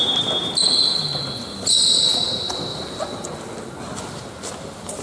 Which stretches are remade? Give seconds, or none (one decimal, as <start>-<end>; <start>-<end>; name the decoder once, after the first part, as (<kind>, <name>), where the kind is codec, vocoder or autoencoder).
2.7-3.4 (vocoder, BigVGAN v2)